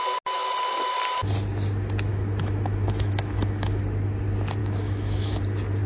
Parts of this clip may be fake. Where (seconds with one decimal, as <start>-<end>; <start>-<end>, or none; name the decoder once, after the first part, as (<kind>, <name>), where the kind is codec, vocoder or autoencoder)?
2.1-3.8 (autoencoder, DAC-VAE); 4.6-5.4